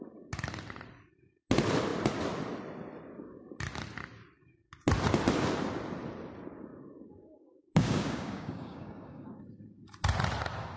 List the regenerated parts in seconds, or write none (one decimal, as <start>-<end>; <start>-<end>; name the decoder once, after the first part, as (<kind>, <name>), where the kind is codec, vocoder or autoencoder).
6.7-9.4 (codec, DAC)